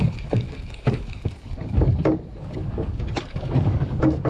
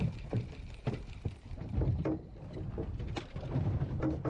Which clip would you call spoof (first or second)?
first